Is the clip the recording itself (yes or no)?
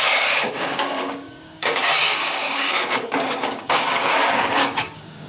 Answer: no